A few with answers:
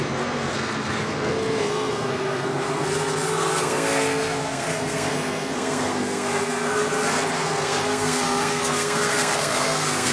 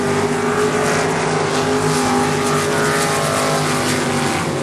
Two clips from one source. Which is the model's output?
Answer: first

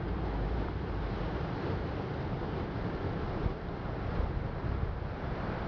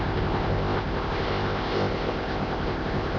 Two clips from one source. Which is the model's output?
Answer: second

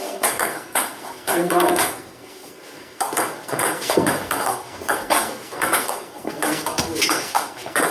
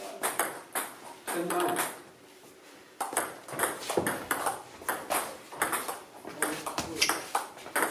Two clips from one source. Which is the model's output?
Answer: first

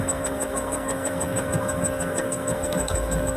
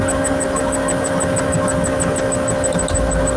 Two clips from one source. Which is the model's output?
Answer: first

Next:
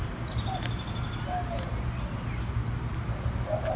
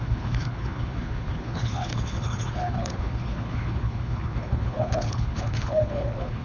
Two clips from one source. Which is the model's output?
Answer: second